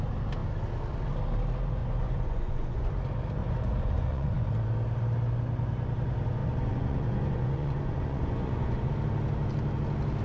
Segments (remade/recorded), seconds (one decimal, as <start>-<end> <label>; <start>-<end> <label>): 0.0-1.8 recorded; 1.8-2.9 remade; 2.9-3.4 recorded; 3.4-4.5 remade; 4.5-6.4 recorded; 6.4-8.9 remade; 8.9-10.2 recorded